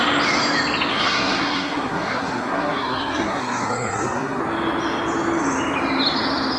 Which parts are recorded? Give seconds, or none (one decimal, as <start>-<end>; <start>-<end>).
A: 0.0-0.9; 4.4-6.6